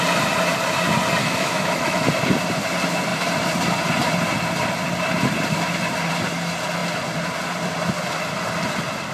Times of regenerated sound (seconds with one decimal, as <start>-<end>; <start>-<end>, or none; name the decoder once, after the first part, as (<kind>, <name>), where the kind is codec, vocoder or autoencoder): 1.2-2.0 (autoencoder, DAC-VAE)